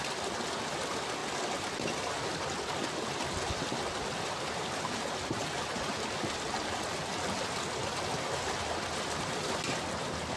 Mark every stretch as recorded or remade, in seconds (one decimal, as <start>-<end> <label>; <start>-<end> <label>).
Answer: 0.0-10.4 recorded